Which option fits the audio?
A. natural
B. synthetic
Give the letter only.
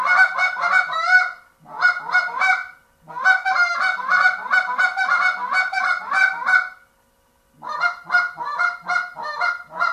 A